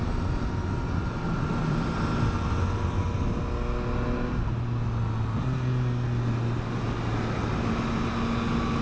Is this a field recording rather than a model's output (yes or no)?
yes